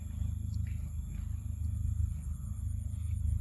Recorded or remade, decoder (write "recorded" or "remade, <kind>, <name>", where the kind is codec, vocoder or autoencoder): recorded